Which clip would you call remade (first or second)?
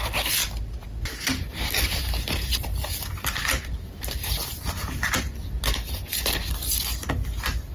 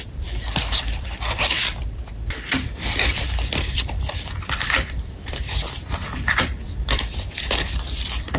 second